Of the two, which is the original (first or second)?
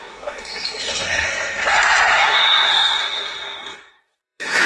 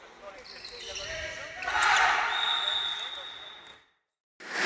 second